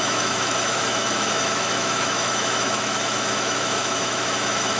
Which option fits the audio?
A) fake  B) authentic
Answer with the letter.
A